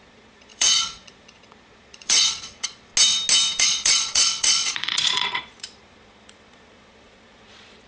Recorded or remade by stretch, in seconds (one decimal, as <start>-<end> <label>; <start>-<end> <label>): 0.0-2.9 remade; 2.9-3.6 recorded; 3.6-7.9 remade